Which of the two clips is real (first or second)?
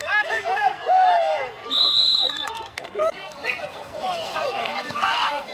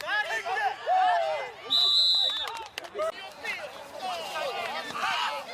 second